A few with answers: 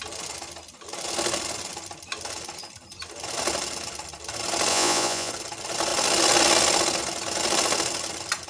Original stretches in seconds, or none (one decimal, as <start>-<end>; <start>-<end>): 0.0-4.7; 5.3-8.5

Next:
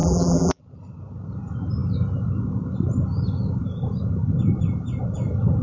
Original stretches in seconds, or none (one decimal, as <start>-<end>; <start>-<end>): 0.6-5.6

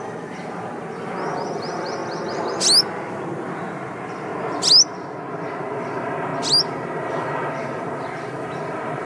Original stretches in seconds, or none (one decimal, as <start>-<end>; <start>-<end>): 2.0-3.1; 4.3-5.3; 6.3-7.1